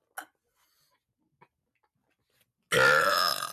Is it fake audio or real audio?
real